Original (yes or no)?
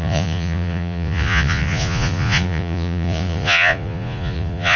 no